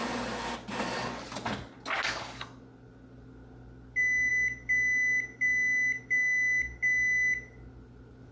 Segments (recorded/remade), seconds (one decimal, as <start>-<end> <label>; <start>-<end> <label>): 0.0-8.3 recorded